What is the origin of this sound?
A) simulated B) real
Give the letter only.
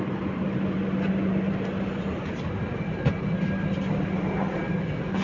B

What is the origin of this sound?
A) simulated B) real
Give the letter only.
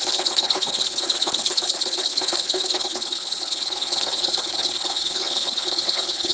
A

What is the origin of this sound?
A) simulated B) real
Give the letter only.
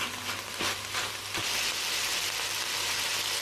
B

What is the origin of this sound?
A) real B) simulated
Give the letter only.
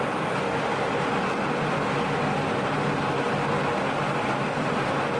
A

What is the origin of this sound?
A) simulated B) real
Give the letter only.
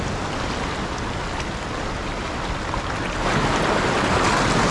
B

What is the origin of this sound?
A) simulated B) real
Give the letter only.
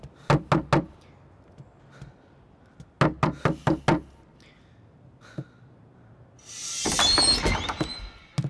B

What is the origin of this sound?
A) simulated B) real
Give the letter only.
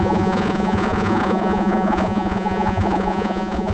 A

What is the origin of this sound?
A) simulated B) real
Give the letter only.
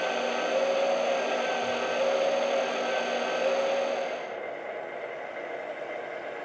B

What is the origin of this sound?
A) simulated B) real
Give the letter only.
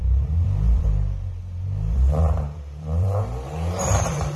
A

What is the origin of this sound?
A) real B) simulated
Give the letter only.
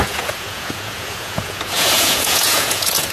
B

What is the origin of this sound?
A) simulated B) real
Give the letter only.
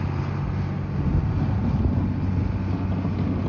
B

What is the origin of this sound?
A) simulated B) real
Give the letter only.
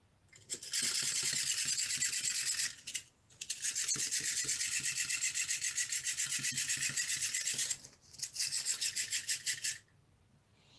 B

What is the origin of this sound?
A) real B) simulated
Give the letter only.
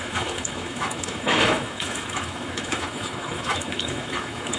B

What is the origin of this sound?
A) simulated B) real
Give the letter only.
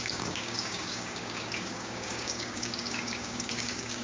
A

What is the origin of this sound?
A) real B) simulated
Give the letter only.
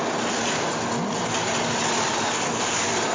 A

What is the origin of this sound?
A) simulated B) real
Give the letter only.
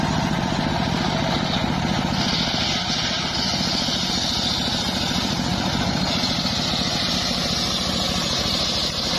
B